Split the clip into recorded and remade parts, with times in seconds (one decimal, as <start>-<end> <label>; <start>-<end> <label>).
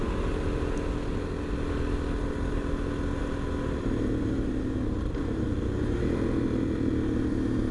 0.0-7.7 recorded